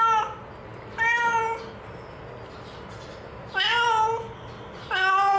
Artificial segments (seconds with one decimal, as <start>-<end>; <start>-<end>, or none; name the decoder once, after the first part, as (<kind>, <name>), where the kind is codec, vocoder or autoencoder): none